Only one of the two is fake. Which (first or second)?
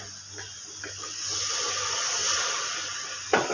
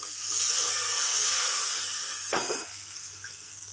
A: second